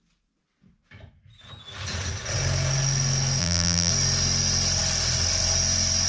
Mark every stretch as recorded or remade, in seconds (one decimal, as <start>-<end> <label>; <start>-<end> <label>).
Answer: 0.0-3.4 recorded; 3.4-3.9 remade; 3.9-6.1 recorded